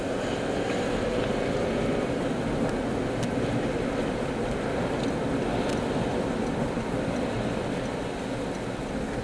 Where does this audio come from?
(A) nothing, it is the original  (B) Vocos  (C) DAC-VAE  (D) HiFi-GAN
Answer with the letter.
A